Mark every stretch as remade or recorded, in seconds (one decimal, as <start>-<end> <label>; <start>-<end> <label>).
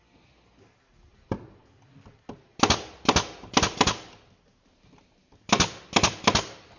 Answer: 0.0-6.8 recorded